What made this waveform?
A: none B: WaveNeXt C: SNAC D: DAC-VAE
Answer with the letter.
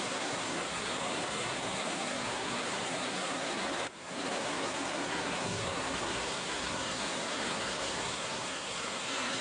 C